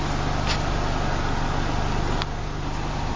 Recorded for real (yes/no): yes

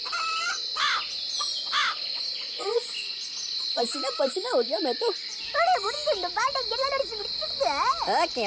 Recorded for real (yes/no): yes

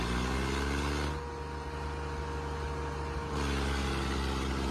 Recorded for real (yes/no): yes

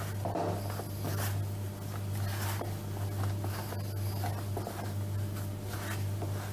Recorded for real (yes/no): yes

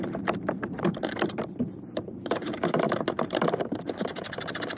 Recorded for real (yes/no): no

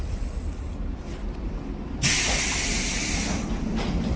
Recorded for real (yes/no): yes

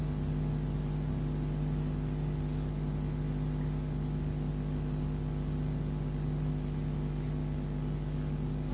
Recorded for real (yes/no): yes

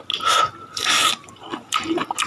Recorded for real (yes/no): yes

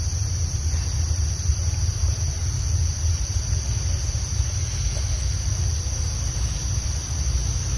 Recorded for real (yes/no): yes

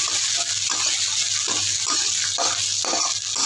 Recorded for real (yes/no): yes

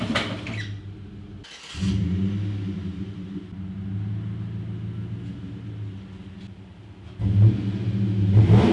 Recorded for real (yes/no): yes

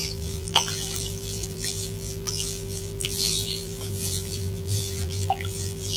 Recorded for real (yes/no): no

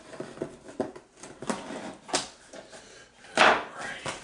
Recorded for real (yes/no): yes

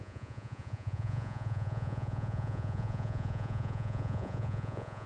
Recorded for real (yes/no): no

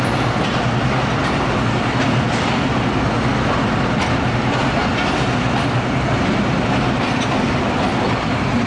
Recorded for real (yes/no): yes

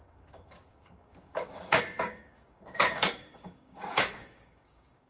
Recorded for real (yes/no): no